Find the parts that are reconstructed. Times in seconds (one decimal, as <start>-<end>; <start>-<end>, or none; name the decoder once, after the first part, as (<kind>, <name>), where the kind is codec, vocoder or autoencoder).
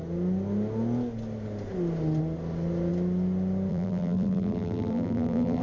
3.7-5.6 (vocoder, BigVGAN v2)